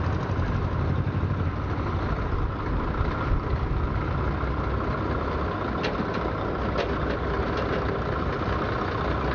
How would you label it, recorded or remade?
recorded